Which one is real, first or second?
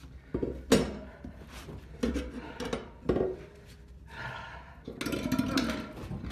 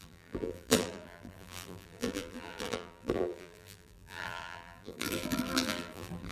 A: first